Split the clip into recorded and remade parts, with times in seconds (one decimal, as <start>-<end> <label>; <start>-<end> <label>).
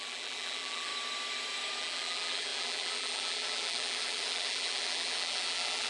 0.0-0.9 remade; 0.9-1.8 recorded; 1.8-5.9 remade